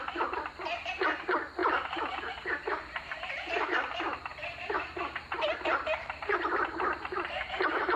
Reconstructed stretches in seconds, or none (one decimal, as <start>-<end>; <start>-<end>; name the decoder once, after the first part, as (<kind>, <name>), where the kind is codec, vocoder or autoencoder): 0.0-8.0 (vocoder, BigVGAN v2)